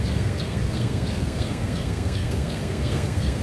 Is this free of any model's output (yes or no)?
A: no